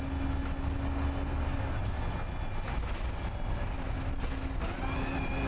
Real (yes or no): yes